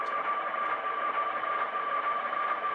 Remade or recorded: remade